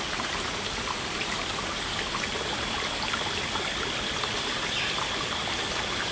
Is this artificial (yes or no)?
yes